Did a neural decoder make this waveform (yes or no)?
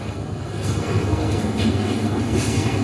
yes